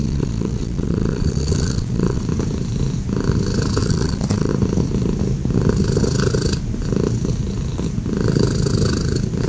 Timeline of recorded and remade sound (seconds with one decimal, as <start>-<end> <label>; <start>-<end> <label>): 0.0-2.2 remade; 2.2-3.8 recorded; 3.8-4.5 remade; 4.5-9.5 recorded